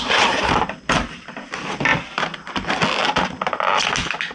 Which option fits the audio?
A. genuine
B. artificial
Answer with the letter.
A